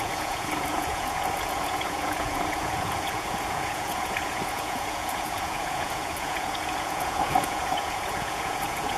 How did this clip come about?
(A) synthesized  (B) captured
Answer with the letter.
A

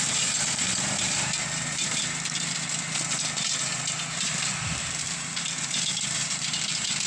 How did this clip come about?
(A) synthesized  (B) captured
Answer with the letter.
A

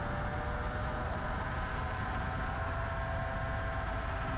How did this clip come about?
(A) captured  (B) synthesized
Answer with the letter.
A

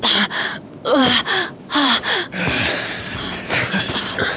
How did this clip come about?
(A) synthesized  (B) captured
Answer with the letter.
A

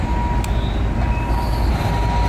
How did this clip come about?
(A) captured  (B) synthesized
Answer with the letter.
A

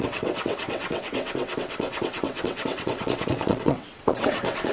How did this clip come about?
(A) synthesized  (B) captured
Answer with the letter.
A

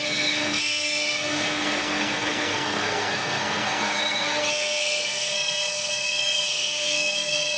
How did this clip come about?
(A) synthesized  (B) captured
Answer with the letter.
A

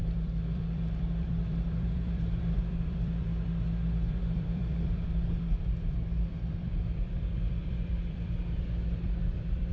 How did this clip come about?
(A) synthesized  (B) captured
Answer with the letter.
A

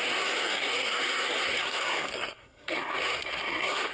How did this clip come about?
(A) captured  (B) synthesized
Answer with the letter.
B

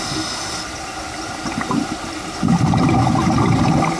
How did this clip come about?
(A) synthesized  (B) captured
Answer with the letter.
B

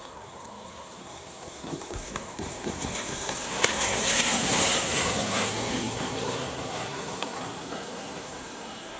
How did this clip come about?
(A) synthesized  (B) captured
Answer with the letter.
A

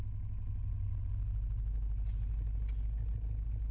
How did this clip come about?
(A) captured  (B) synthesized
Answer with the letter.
A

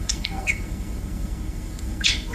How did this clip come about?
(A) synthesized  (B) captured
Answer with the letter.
A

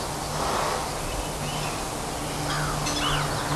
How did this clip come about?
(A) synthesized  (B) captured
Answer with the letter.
B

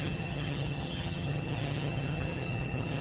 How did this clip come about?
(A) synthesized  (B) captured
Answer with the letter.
A